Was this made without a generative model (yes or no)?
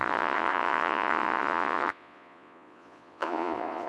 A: no